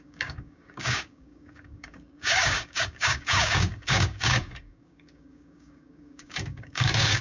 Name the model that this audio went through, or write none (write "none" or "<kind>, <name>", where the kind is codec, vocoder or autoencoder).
codec, DAC